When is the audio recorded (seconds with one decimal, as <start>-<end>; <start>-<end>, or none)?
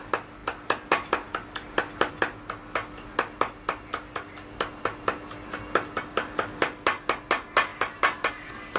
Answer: 0.0-8.8